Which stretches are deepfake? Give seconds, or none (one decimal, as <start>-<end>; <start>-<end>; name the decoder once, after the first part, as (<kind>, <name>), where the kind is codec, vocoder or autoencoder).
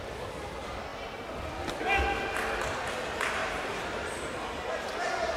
3.4-4.4 (vocoder, BigVGAN v2)